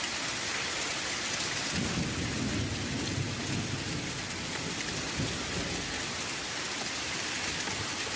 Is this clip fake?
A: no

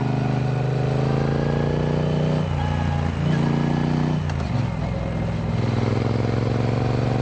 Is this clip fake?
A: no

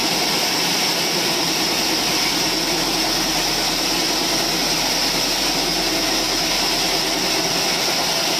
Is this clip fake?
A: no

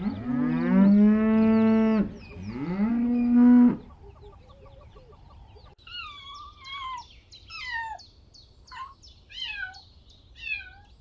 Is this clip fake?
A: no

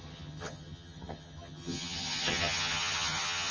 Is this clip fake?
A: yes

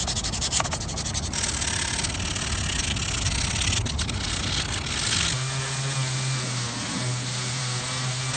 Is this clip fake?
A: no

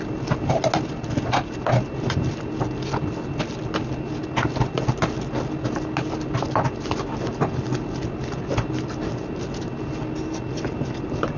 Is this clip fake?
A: no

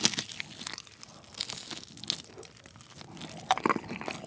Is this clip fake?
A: no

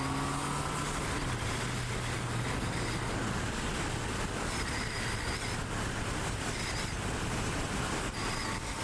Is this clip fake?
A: no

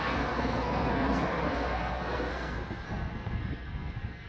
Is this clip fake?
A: yes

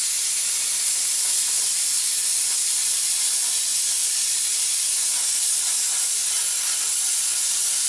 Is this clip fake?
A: yes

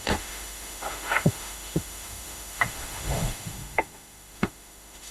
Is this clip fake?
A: yes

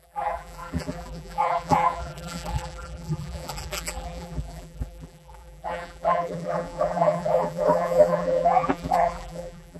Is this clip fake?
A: yes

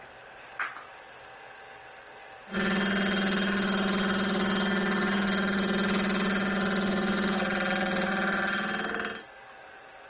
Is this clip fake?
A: no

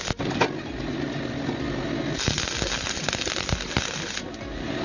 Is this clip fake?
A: no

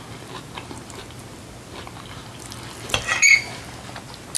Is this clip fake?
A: no